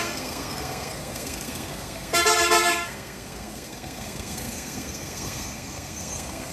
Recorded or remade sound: remade